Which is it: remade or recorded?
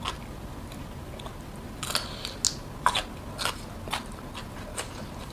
recorded